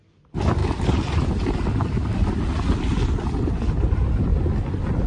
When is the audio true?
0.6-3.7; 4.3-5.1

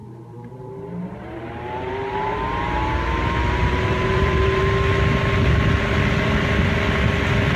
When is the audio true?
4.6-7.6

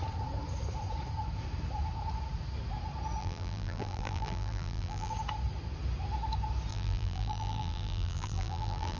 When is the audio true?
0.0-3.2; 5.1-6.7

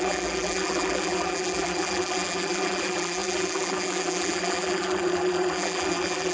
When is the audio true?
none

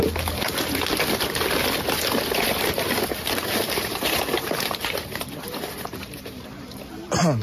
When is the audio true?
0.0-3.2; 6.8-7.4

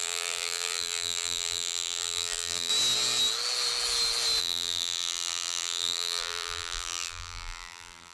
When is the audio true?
2.7-4.4

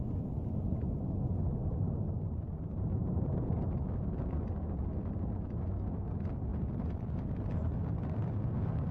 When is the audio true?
0.0-1.6; 3.9-8.9

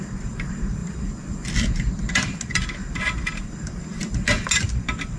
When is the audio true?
0.0-5.2